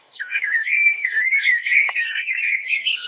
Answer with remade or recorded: remade